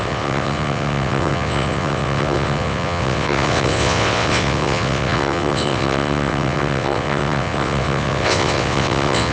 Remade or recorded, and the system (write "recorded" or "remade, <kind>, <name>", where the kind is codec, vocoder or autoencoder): remade, vocoder, WaveNeXt